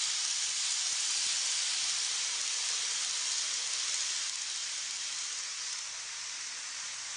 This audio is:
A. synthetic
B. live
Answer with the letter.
B